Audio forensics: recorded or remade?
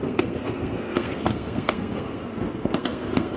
remade